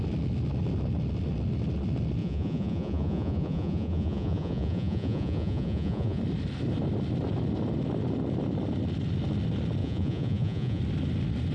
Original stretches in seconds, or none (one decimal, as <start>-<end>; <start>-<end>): 0.0-2.2; 6.2-9.8; 10.8-11.5